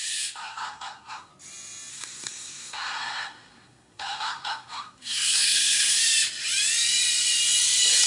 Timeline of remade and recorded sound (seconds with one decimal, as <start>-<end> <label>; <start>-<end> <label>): 0.0-1.3 remade; 1.3-1.9 recorded; 1.9-6.0 remade; 6.0-8.1 recorded